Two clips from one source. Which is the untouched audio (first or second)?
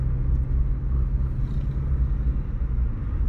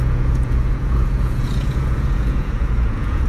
first